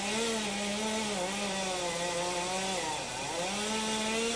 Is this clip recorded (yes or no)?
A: yes